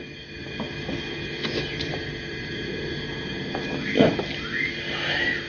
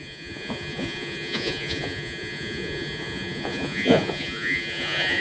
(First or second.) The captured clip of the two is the first